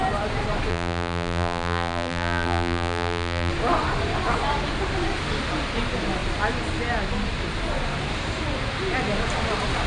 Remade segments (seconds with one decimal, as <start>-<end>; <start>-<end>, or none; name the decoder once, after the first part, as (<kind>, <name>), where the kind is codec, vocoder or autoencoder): 0.7-3.5 (vocoder, BigVGAN v2)